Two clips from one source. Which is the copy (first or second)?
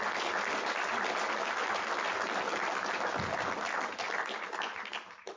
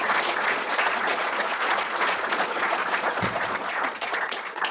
second